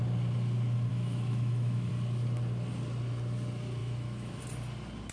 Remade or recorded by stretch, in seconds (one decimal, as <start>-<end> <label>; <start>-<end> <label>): 0.0-0.9 recorded; 0.9-1.9 remade; 1.9-3.8 recorded; 3.8-4.4 remade; 4.4-5.1 recorded